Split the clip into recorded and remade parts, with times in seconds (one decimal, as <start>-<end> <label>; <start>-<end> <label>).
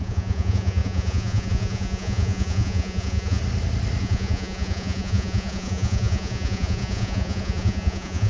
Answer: 0.0-3.4 remade; 3.4-4.0 recorded; 4.0-8.3 remade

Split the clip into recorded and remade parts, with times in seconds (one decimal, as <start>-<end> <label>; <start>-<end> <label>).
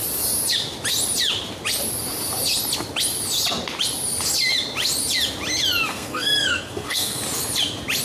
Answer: 0.0-5.9 recorded; 5.9-7.2 remade; 7.2-8.0 recorded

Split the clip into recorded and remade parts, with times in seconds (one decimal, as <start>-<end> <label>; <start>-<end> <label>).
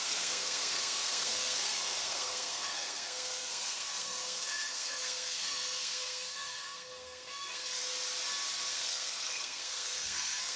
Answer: 0.0-7.8 remade; 7.8-8.7 recorded; 8.7-10.6 remade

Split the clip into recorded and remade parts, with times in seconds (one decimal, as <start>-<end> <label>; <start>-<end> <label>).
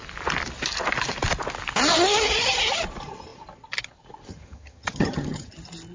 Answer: 0.0-4.3 recorded; 4.3-5.5 remade; 5.5-5.9 recorded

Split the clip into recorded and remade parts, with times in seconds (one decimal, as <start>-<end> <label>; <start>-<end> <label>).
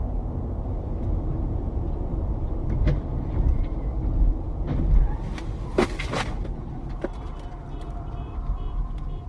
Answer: 0.0-9.3 recorded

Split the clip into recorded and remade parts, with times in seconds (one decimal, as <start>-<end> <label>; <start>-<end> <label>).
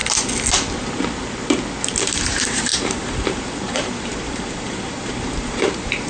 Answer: 0.0-2.0 recorded; 2.0-6.1 remade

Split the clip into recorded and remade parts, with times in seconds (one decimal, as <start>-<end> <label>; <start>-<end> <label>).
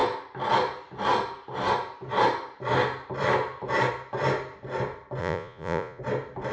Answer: 0.0-5.2 recorded; 5.2-6.0 remade; 6.0-6.5 recorded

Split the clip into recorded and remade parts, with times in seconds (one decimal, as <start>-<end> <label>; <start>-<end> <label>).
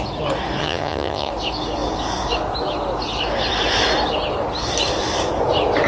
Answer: 0.0-0.6 recorded; 0.6-1.3 remade; 1.3-5.9 recorded